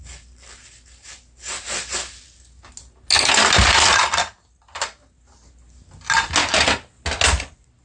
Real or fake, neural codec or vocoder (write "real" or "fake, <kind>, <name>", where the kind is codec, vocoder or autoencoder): real